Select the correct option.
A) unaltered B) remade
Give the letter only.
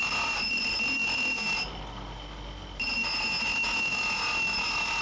A